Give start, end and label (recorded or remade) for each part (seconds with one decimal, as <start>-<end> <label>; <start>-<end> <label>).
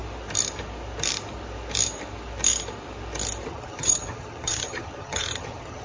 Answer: 0.0-3.5 recorded; 3.5-5.8 remade